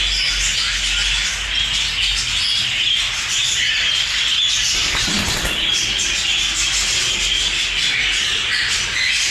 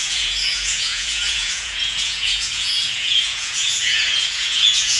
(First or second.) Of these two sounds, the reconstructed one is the second